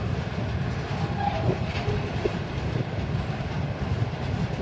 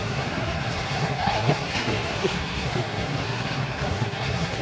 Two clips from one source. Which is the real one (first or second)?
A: first